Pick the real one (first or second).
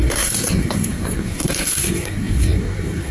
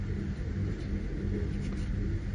second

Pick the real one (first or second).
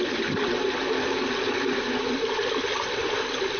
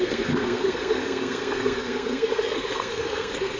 first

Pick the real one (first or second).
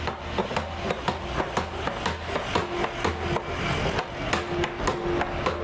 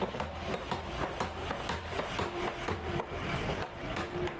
first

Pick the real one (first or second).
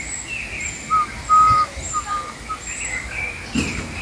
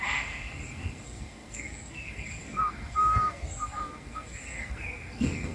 first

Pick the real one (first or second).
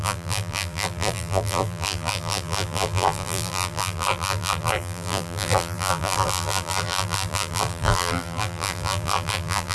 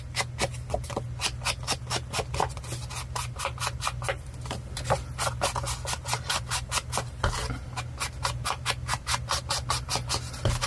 second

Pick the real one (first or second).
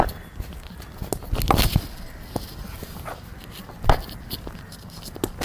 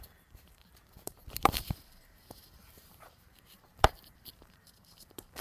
first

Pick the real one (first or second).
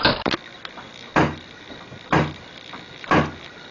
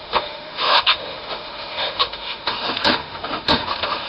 first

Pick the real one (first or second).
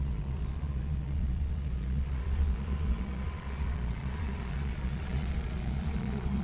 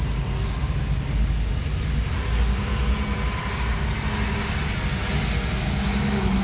second